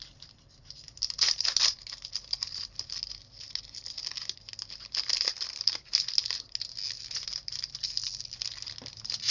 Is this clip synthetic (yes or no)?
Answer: no